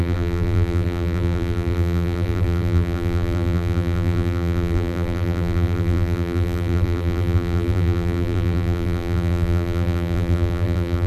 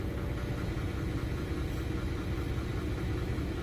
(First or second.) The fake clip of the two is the first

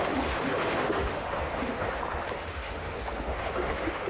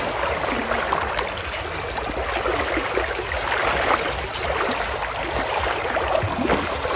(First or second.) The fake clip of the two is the first